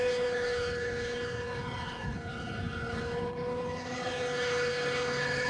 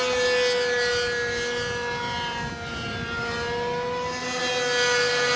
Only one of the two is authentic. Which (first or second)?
second